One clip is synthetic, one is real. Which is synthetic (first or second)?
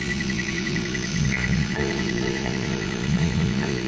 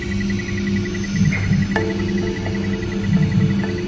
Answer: first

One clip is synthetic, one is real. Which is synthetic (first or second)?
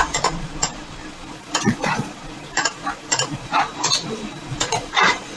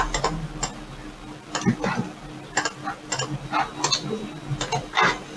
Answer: first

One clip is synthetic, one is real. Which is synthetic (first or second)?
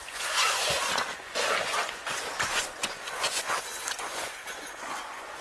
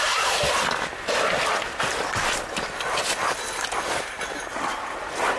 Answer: first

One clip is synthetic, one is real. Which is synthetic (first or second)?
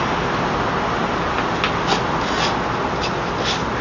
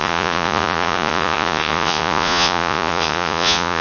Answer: second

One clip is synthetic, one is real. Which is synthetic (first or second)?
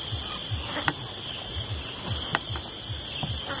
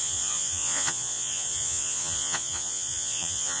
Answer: second